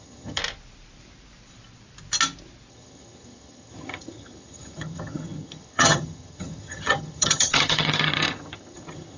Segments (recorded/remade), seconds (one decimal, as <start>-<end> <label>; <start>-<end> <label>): 0.0-0.4 remade; 0.4-2.7 recorded; 2.7-9.2 remade

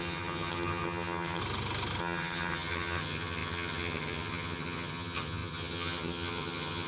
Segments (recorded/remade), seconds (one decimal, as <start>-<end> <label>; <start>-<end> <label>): 0.0-1.4 remade; 1.4-2.0 recorded; 2.0-6.9 remade

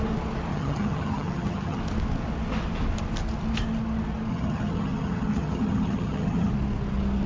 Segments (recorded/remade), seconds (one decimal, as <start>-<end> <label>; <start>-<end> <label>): 0.0-0.5 recorded; 0.5-1.8 remade; 1.8-4.3 recorded; 4.3-6.5 remade; 6.5-7.3 recorded

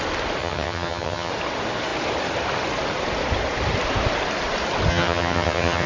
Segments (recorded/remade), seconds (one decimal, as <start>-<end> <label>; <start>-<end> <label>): 0.0-0.4 recorded; 0.4-1.3 remade; 1.3-4.9 recorded; 4.9-5.9 remade

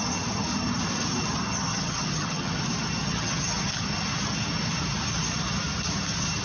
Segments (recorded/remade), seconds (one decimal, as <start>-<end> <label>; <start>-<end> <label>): 0.0-1.7 recorded; 1.7-2.6 remade; 2.6-3.0 recorded; 3.0-3.7 remade; 3.7-6.4 recorded

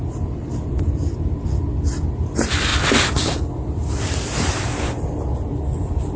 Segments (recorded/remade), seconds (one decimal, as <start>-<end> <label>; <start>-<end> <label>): 0.0-6.2 recorded

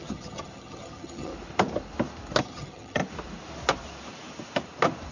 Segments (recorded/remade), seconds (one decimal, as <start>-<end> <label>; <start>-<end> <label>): 0.0-1.3 remade; 1.3-2.4 recorded; 2.4-3.0 remade; 3.0-5.1 recorded